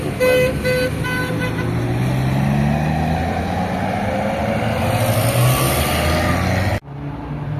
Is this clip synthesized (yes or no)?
no